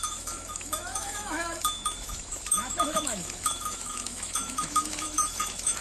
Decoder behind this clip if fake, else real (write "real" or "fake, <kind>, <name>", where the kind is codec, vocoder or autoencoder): fake, autoencoder, DAC-VAE